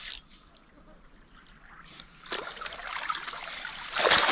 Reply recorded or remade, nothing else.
recorded